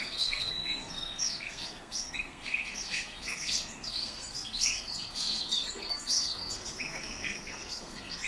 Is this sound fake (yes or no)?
yes